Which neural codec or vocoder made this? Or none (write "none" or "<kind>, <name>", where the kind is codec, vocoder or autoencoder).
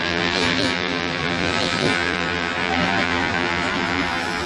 vocoder, BigVGAN v2